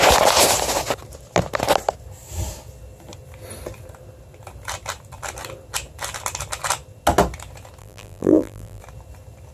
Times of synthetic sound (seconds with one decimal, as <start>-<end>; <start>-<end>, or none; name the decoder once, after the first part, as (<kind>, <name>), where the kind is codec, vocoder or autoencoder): 7.8-8.8 (vocoder, BigVGAN v2)